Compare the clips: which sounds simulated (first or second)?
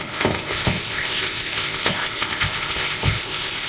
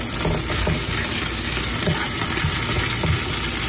first